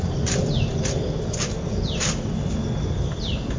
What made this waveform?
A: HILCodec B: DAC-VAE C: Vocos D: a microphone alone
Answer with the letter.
D